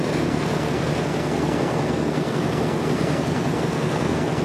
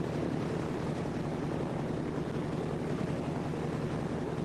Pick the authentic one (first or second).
second